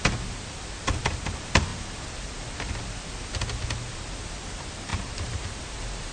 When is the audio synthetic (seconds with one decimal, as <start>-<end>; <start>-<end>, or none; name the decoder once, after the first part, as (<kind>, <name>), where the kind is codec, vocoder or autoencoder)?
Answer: 1.7-2.7 (vocoder, BigVGAN v2); 4.9-6.1